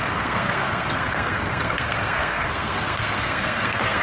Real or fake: fake